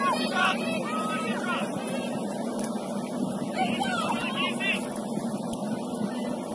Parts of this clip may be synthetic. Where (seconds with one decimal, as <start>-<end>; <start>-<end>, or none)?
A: 0.0-6.5